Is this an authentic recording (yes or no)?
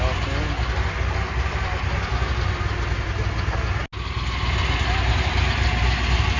yes